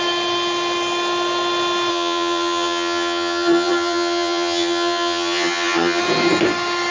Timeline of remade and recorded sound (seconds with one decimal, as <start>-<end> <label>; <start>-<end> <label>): 0.0-1.9 recorded; 1.9-6.0 remade; 6.0-6.9 recorded